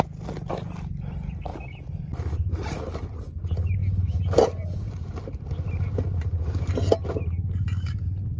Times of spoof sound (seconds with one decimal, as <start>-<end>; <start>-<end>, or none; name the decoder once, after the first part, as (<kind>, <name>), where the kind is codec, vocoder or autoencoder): none